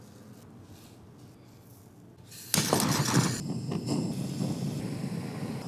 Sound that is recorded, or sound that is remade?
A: recorded